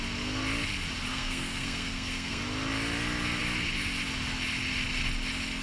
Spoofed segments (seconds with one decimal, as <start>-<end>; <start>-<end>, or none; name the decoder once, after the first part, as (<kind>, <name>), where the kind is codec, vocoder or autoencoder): 1.1-2.4 (codec, SNAC)